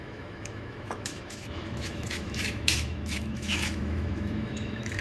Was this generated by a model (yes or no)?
yes